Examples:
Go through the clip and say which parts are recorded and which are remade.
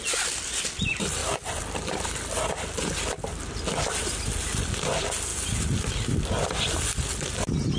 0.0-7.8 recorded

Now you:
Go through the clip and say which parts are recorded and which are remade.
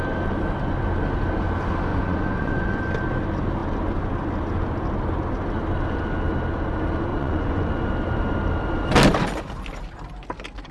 0.0-1.9 recorded; 1.9-2.8 remade; 2.8-7.1 recorded; 7.1-7.7 remade; 7.7-10.7 recorded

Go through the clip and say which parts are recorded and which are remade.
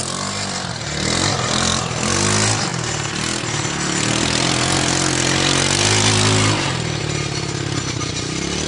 0.0-8.7 recorded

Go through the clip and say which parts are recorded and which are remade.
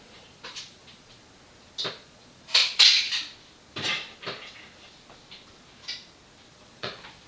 0.0-1.2 remade; 1.2-1.9 recorded; 1.9-2.6 remade; 2.6-6.5 recorded; 6.5-7.3 remade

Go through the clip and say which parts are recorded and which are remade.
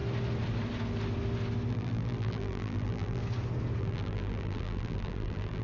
0.0-1.7 recorded; 1.7-3.2 remade; 3.2-3.8 recorded; 3.8-5.6 remade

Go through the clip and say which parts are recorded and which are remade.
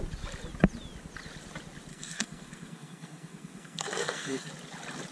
0.0-1.9 recorded; 1.9-4.5 remade; 4.5-5.1 recorded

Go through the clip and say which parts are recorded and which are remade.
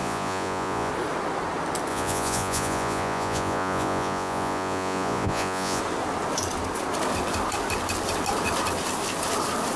0.0-0.9 remade; 0.9-1.9 recorded; 1.9-5.8 remade; 5.8-9.8 recorded